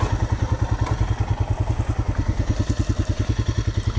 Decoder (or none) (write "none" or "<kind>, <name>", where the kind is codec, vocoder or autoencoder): none